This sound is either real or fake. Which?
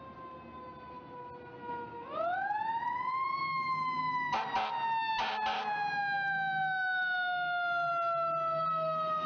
real